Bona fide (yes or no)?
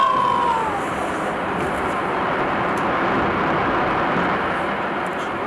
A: yes